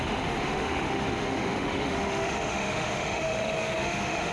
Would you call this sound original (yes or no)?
no